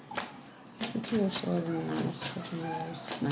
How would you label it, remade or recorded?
recorded